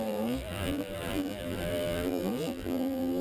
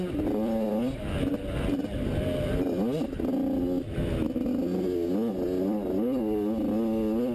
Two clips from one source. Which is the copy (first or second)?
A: first